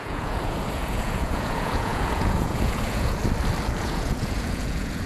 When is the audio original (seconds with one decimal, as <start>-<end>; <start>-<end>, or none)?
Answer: 3.2-3.8